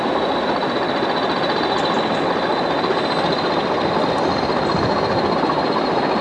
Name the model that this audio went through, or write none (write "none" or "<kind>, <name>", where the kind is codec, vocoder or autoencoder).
none